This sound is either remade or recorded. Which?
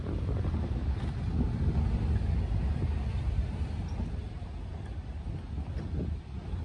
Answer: recorded